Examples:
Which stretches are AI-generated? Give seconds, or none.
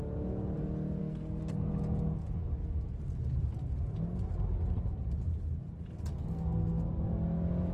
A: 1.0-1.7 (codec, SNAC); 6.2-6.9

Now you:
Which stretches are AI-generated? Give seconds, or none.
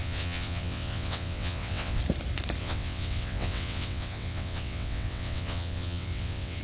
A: 0.0-2.0 (vocoder, WaveNeXt); 2.6-6.6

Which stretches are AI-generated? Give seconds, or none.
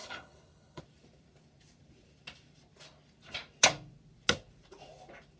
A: 0.0-0.8 (codec, HILCodec)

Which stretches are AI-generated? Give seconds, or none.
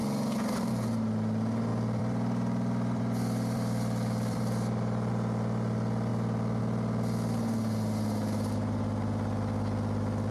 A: 1.7-5.1 (vocoder, BigVGAN v2)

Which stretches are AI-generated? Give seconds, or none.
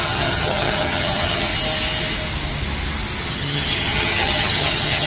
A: 0.0-1.5 (vocoder, HiFi-GAN); 3.2-5.1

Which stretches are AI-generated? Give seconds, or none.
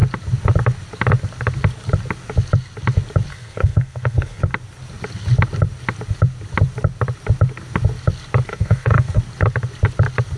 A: 3.3-4.4 (codec, SNAC); 8.5-9.2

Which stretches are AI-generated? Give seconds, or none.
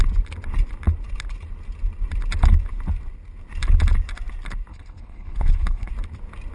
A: 4.7-5.9 (codec, HILCodec)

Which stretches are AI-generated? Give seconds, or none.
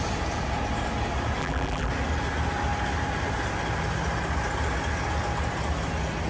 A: 1.4-1.9 (vocoder, BigVGAN v2)